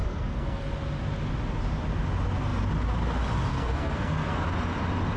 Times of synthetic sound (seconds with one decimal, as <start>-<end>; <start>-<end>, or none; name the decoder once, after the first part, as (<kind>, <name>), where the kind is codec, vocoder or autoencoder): 0.0-0.6 (codec, SNAC); 3.5-4.4